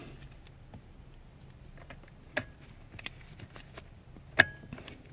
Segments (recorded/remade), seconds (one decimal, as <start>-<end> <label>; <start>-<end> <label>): 0.0-5.1 recorded